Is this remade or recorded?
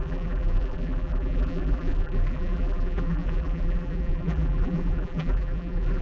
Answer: remade